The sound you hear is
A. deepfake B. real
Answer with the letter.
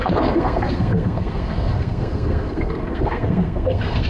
A